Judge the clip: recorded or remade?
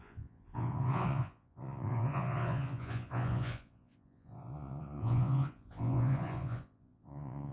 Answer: remade